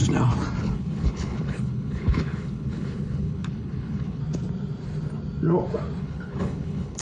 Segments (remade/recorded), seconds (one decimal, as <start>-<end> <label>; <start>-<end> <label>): 0.0-0.6 recorded; 0.6-4.2 remade; 4.2-6.0 recorded; 6.0-7.0 remade